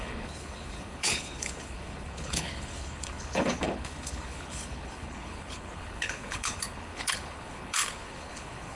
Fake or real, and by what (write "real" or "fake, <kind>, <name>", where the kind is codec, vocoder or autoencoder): fake, codec, HILCodec